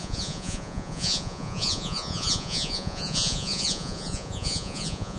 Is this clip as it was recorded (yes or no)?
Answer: no